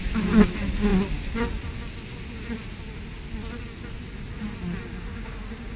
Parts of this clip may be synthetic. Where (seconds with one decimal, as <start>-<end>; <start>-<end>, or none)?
5.1-5.8